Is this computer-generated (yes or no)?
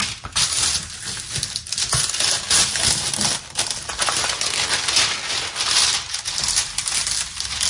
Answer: no